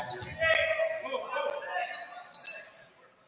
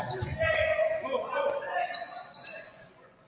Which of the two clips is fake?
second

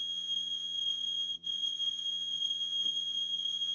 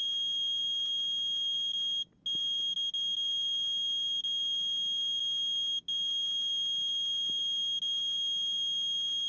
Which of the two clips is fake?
first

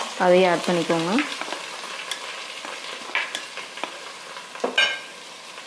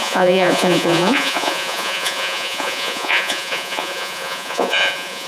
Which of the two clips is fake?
second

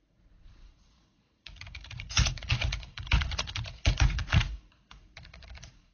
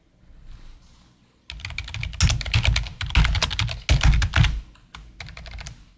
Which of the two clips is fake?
first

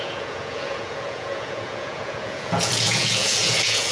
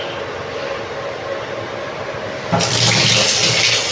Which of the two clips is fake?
first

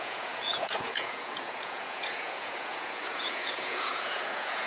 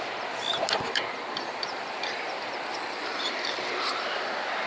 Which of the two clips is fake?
first